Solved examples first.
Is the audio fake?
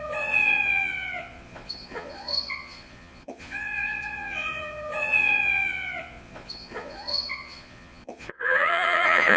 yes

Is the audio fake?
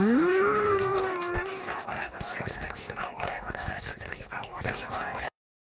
yes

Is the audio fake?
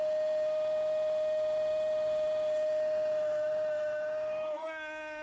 yes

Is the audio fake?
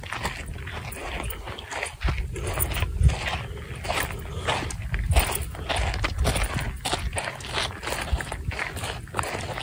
no